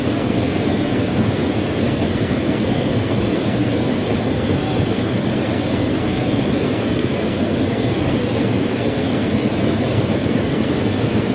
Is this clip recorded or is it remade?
remade